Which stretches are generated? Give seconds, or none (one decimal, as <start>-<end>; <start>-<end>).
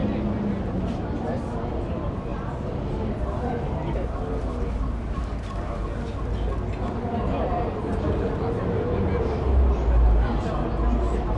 none